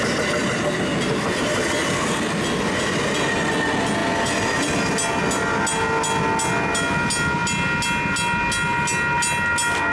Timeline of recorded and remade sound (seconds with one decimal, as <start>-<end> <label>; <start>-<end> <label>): 0.0-9.9 recorded